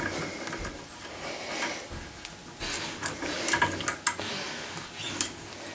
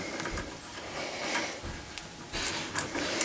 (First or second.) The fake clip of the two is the second